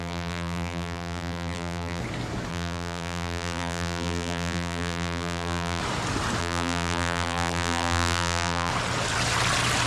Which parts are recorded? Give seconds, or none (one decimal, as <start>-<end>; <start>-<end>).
2.0-2.5; 5.8-6.4; 8.7-9.9